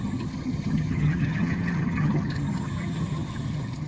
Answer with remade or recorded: remade